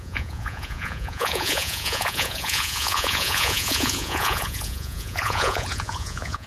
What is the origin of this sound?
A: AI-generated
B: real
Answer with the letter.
A